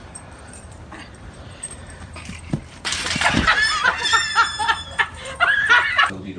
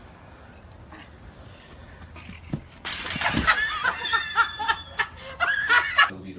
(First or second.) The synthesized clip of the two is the first